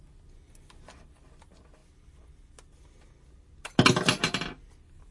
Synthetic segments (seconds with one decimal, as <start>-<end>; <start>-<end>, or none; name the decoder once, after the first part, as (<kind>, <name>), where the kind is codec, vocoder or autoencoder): none